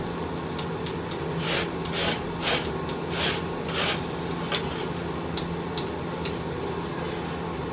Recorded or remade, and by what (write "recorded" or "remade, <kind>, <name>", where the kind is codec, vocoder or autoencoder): recorded